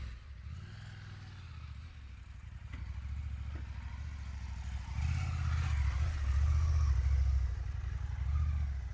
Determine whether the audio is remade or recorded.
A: recorded